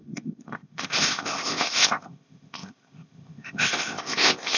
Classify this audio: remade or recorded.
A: remade